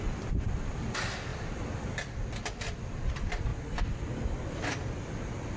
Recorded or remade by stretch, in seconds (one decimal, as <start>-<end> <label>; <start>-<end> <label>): 0.0-3.5 remade; 3.5-4.5 recorded; 4.5-5.6 remade